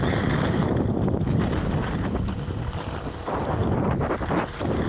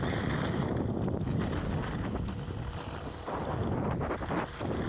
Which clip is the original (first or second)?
second